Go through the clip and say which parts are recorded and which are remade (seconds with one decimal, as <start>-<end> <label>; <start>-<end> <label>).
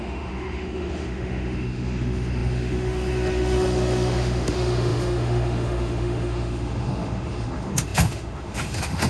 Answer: 0.0-9.1 remade